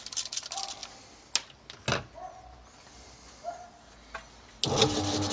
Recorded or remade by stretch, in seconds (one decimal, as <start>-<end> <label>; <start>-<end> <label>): 0.0-5.3 recorded